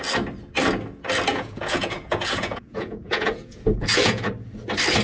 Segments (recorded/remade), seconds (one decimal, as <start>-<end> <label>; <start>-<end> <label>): 0.0-1.3 recorded; 1.3-4.3 remade; 4.3-5.0 recorded